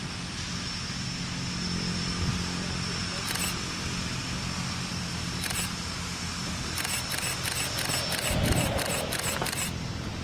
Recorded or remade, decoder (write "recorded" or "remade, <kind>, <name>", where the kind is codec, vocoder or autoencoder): recorded